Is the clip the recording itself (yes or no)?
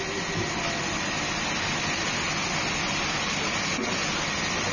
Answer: yes